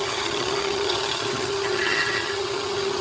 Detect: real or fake fake